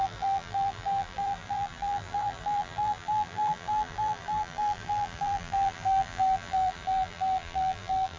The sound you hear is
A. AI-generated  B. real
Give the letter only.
A